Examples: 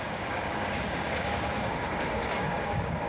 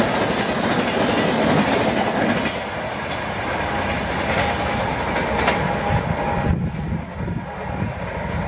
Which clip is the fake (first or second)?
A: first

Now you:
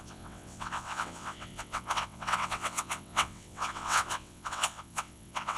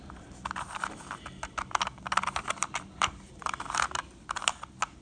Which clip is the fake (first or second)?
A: first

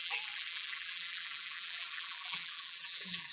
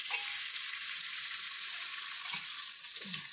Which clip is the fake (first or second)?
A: first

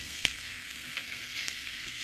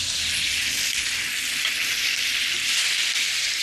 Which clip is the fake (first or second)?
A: first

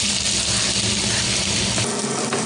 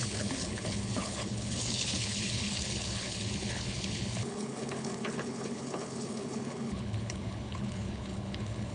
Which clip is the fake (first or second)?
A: second